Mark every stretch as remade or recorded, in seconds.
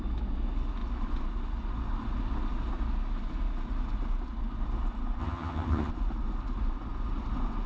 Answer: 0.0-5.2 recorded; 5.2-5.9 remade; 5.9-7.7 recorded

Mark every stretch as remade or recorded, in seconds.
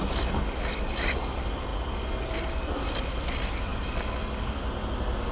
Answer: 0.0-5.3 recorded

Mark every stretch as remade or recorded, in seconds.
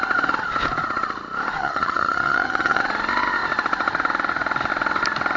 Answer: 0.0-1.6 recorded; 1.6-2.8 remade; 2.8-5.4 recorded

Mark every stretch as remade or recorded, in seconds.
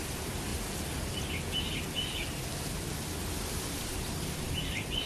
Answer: 0.0-0.5 remade; 0.5-3.6 recorded; 3.6-5.1 remade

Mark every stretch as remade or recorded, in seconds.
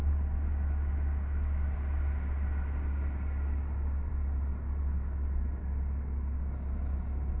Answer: 0.0-7.4 recorded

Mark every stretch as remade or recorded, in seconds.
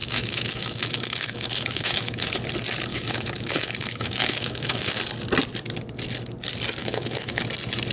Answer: 0.0-2.3 remade; 2.3-2.9 recorded; 2.9-5.0 remade; 5.0-6.8 recorded; 6.8-7.4 remade; 7.4-7.9 recorded